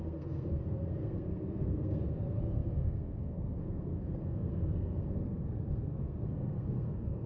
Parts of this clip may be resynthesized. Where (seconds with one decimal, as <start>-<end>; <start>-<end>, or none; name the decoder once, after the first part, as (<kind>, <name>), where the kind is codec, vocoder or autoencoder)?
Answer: 0.0-7.3 (codec, SNAC)